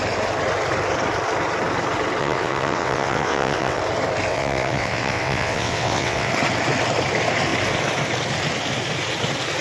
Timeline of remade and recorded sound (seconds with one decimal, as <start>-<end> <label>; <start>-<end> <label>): 0.0-2.2 recorded; 2.2-3.8 remade; 3.8-4.3 recorded; 4.3-6.3 remade; 6.3-9.6 recorded